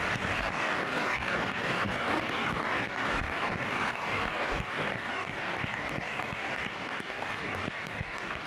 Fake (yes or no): yes